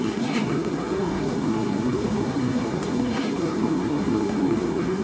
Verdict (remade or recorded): remade